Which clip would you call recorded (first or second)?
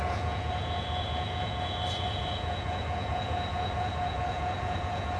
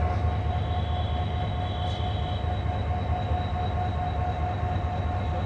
second